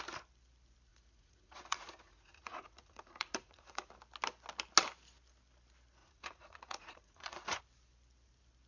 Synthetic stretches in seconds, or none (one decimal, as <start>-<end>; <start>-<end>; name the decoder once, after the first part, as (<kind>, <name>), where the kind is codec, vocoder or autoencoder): 0.9-3.9 (vocoder, Vocos); 6.0-7.6